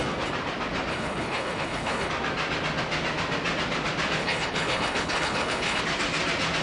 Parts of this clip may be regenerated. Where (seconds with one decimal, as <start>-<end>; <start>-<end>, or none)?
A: 0.9-2.1; 4.2-5.8